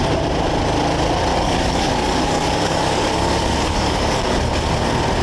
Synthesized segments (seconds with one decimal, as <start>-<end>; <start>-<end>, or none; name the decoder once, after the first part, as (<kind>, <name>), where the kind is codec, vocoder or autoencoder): 1.3-4.4 (codec, DAC)